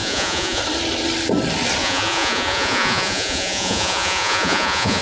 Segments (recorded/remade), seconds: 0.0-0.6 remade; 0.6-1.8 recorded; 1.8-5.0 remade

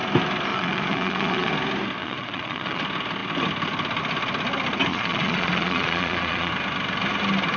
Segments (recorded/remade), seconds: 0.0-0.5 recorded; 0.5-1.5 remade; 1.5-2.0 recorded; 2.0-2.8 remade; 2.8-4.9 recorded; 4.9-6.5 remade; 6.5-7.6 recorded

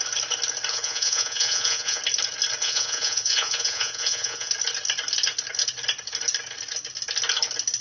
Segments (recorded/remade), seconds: 0.0-0.7 recorded; 0.7-2.0 remade; 2.0-2.6 recorded; 2.6-4.5 remade; 4.5-7.8 recorded